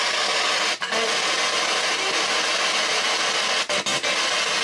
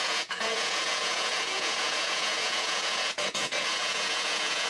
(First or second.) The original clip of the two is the first